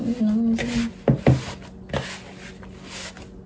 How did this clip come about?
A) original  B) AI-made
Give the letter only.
A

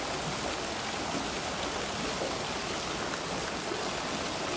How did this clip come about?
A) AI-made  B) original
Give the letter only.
B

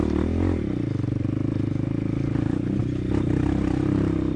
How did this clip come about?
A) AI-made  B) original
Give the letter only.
B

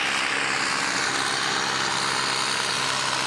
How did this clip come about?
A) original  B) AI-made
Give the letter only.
A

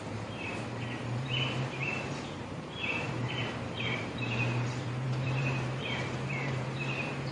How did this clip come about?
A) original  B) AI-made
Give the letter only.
B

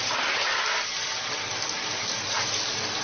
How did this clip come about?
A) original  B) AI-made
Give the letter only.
A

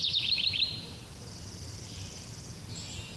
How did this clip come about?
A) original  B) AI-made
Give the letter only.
B